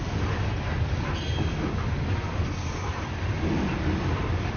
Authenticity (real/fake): real